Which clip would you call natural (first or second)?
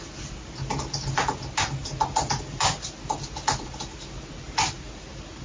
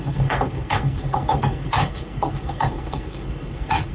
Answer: first